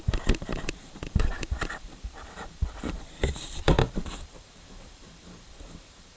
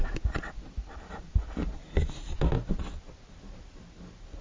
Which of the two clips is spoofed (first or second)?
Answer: first